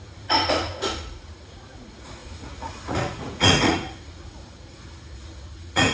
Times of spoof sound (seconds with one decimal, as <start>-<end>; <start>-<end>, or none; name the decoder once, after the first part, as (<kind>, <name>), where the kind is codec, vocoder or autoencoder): 0.0-5.9 (vocoder, Vocos)